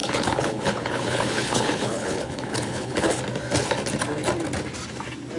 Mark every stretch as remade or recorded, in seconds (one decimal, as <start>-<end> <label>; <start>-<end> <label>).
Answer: 0.0-3.2 remade; 3.2-5.4 recorded